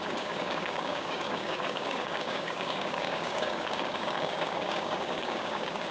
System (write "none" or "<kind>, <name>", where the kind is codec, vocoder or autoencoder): codec, DAC